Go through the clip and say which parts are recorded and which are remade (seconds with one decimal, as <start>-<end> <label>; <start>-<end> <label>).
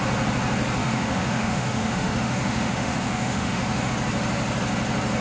0.0-0.8 recorded; 0.8-3.9 remade; 3.9-5.2 recorded